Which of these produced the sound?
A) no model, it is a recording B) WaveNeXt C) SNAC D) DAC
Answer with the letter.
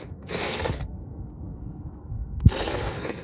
C